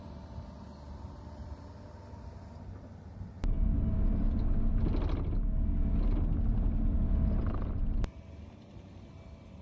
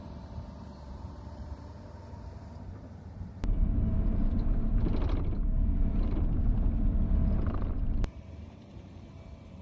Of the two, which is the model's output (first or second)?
second